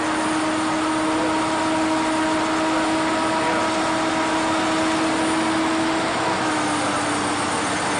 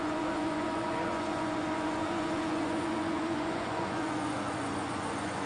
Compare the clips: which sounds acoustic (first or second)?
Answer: first